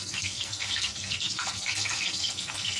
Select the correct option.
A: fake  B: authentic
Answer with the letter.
A